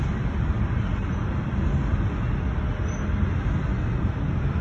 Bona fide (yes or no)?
yes